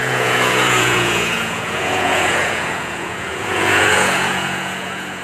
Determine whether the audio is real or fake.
fake